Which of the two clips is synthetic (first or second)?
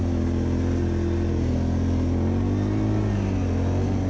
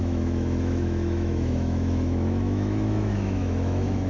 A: second